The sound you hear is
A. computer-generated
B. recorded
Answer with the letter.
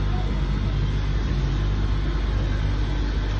B